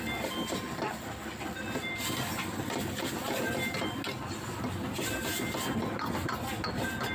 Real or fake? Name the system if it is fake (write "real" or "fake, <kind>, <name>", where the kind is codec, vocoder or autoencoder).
real